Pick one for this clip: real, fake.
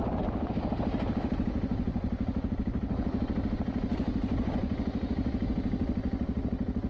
real